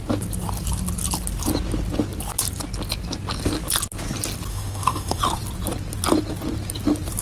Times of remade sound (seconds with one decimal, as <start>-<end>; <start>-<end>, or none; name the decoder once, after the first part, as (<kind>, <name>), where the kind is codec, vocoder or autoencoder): 4.5-5.2 (autoencoder, DAC-VAE)

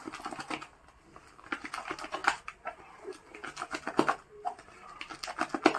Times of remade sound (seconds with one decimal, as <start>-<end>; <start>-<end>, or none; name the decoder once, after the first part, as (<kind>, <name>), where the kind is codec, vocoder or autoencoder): none

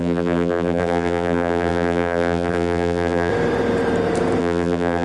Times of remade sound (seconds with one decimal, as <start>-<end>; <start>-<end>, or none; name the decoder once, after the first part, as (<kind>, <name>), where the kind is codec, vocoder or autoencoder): 0.0-3.3 (vocoder, BigVGAN v2); 4.4-5.0

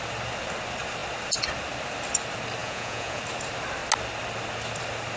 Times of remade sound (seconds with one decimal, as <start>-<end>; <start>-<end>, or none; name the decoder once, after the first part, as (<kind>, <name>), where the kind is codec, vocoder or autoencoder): 2.6-3.2 (vocoder, Vocos)

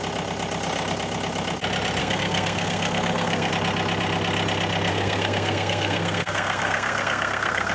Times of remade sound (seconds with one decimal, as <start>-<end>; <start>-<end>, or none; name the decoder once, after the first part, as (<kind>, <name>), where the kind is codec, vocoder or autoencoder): 2.0-3.5 (codec, SNAC); 4.9-7.7

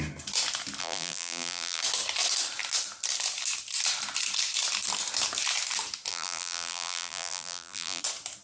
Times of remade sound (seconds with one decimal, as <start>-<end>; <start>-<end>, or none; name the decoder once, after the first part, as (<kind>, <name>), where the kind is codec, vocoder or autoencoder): 0.8-1.8 (vocoder, BigVGAN v2); 6.1-8.0

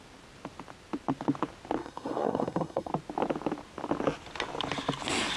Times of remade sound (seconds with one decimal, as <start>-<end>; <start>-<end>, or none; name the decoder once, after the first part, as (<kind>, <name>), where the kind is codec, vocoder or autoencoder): 1.8-2.9 (codec, SNAC)